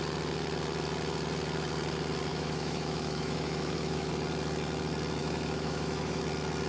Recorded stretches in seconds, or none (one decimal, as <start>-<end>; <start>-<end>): 0.0-2.3; 4.1-5.2; 6.2-6.7